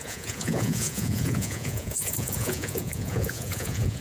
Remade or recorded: remade